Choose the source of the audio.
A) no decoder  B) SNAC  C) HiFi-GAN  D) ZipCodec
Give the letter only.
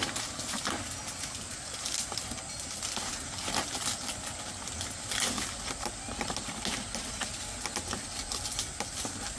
A